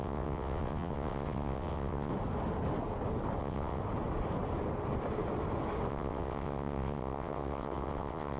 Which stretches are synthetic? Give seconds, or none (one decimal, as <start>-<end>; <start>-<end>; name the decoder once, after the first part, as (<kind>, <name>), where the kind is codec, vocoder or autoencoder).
0.0-2.1 (vocoder, WaveNeXt); 3.4-3.8; 5.9-8.4